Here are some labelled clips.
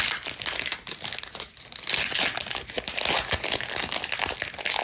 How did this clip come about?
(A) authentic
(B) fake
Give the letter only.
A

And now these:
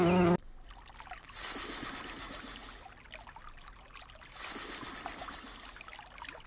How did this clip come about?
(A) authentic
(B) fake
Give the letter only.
A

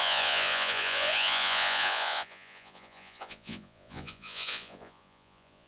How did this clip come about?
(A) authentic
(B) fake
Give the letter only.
B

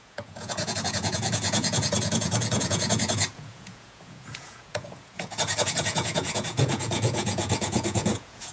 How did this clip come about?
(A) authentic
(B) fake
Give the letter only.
B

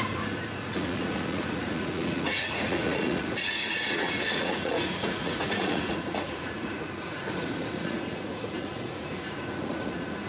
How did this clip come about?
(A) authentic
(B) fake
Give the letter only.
B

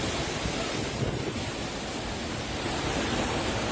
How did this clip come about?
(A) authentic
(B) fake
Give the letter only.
A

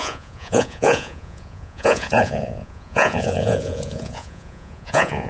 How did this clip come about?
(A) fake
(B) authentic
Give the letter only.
A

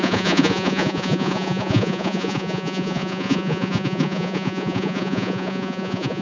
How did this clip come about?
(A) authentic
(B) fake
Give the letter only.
B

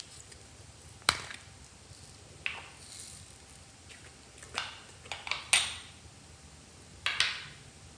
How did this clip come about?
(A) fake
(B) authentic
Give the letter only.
B